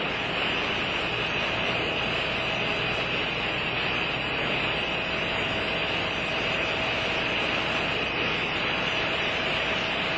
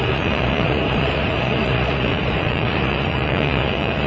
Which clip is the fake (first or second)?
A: second